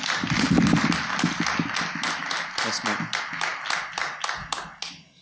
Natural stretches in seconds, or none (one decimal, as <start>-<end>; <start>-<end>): 0.0-5.2